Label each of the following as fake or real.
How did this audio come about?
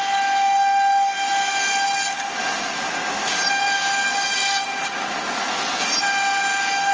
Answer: real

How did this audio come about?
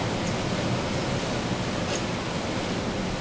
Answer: real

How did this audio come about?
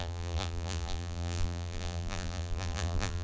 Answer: fake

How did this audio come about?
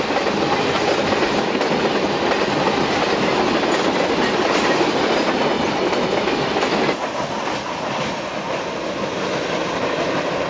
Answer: real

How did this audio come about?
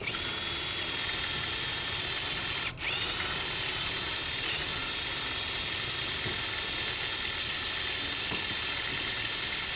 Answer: real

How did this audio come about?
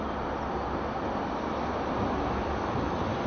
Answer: real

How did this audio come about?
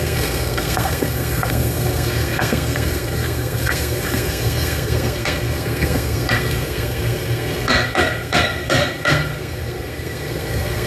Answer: fake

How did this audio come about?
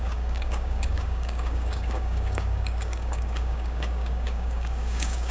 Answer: fake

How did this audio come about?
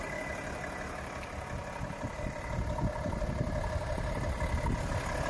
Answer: real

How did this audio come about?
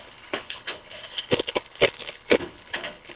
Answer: fake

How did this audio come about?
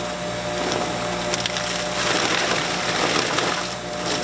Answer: real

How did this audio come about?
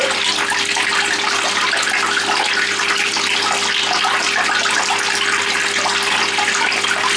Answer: real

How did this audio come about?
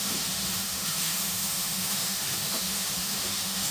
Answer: fake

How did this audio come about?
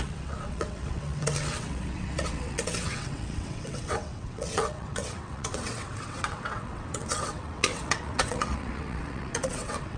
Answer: fake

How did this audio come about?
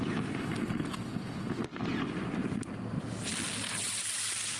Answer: real